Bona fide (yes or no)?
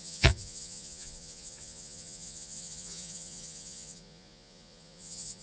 no